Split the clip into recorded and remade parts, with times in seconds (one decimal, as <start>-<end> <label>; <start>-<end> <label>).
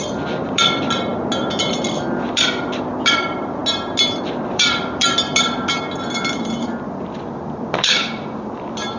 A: 0.0-1.1 remade; 1.1-1.7 recorded; 1.7-3.6 remade; 3.6-4.5 recorded; 4.5-9.0 remade